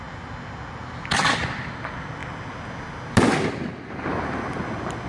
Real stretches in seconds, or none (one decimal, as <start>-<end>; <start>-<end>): 0.0-5.1